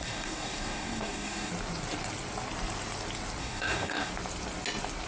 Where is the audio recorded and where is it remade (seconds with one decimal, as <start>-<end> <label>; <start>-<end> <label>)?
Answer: 0.0-1.5 remade; 1.5-3.4 recorded; 3.4-4.1 remade; 4.1-5.1 recorded